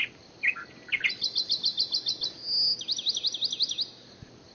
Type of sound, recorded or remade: recorded